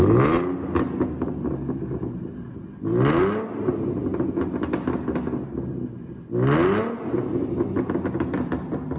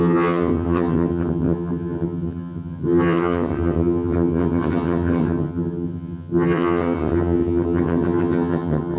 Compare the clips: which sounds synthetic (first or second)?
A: second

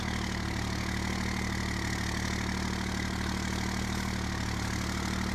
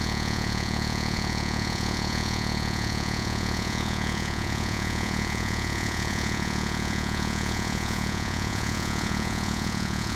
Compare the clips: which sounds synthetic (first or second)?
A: second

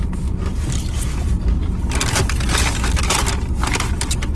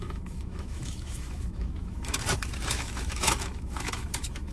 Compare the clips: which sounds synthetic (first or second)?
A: second